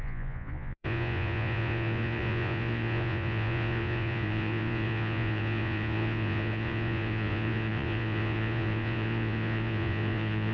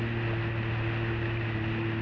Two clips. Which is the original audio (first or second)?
second